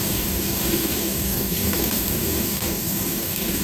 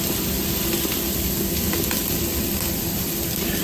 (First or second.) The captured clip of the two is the second